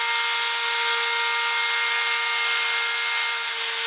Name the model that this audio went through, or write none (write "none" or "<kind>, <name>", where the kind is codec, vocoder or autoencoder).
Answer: none